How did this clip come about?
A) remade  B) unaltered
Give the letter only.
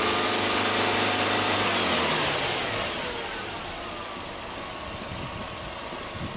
B